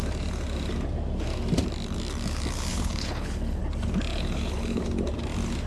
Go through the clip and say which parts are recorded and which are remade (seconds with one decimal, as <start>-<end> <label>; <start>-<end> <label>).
0.0-2.7 recorded; 2.7-3.6 remade; 3.6-4.1 recorded; 4.1-4.8 remade; 4.8-5.7 recorded